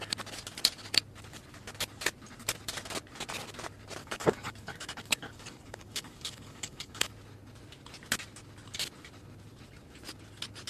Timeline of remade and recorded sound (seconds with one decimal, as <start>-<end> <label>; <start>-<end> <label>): 0.0-4.0 recorded; 4.0-7.1 remade; 7.1-10.7 recorded